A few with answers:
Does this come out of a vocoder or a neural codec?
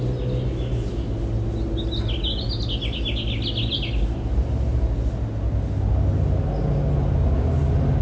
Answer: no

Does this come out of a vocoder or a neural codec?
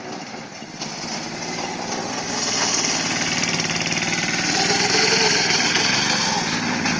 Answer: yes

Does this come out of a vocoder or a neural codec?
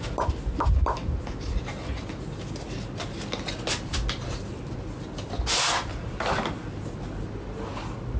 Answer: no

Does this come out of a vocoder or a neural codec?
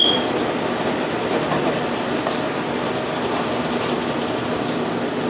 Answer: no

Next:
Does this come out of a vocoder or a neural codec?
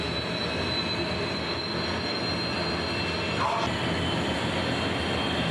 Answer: no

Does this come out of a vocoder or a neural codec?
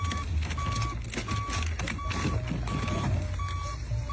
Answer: no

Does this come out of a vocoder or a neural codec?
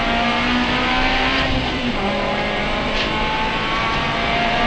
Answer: yes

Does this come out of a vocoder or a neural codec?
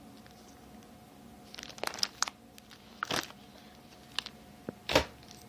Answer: no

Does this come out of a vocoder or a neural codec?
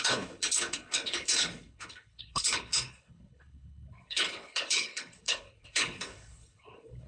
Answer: yes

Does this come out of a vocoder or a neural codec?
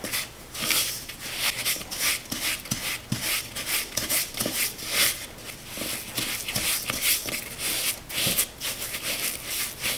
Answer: no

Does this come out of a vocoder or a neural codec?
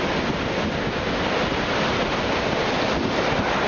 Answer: no